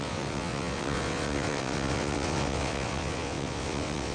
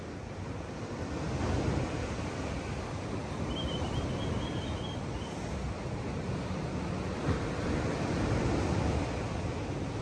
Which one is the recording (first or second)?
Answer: second